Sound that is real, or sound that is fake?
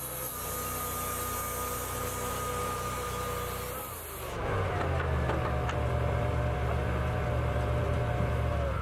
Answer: real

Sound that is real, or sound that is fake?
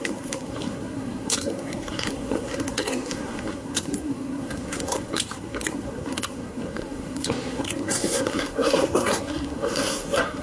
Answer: fake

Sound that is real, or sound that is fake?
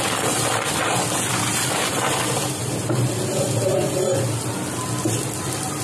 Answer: real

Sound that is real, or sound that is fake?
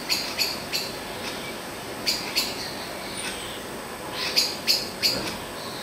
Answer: real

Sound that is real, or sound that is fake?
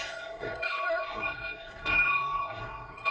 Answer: fake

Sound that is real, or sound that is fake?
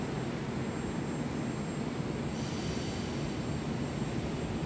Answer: real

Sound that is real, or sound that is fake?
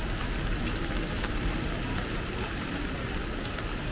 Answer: real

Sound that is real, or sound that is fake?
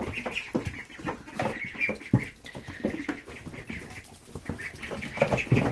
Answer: real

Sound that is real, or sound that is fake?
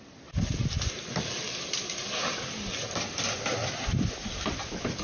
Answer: real